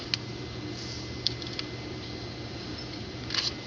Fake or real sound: real